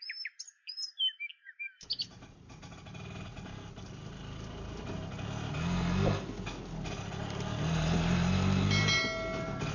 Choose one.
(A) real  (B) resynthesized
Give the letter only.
A